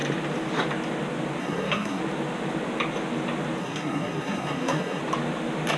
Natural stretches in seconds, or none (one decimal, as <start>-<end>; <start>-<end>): 0.0-1.4; 2.0-3.6; 5.0-5.8